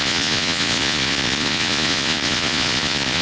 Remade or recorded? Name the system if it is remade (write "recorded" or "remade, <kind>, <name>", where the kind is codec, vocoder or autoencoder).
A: remade, vocoder, Vocos